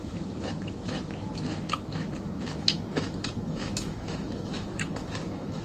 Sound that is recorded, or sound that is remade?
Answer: remade